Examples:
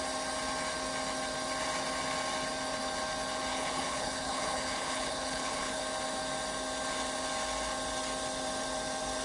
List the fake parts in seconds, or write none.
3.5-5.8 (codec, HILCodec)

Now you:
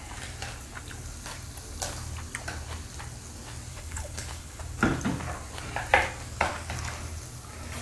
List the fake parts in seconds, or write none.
3.7-4.6 (codec, HILCodec)

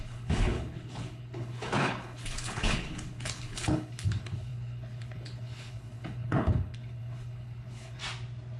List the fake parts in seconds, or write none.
0.0-8.0 (codec, HILCodec)

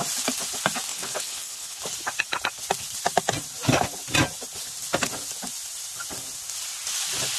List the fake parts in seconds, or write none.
0.9-1.8 (codec, HILCodec)

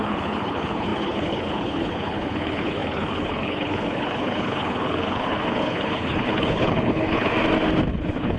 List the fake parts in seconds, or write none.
0.0-7.3 (codec, HILCodec); 7.9-8.4

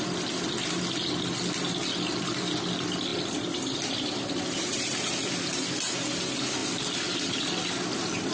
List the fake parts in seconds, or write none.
none

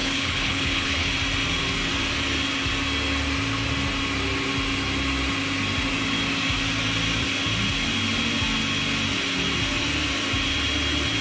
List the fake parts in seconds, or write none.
0.0-1.1 (codec, HILCodec)